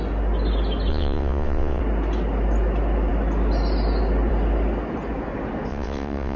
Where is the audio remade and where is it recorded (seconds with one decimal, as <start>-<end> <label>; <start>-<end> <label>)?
0.0-0.9 recorded; 0.9-1.8 remade; 1.8-5.7 recorded; 5.7-6.4 remade